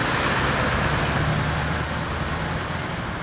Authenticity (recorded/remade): recorded